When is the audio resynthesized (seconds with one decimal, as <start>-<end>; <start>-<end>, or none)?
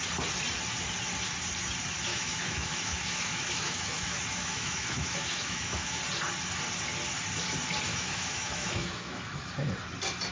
2.1-6.0; 7.9-9.5